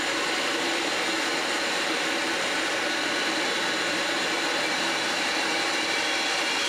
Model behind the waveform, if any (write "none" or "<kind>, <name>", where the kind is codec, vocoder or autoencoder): vocoder, BigVGAN v2